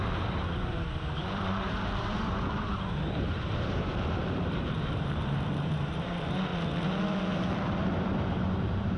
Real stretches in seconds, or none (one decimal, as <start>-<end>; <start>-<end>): 6.5-7.9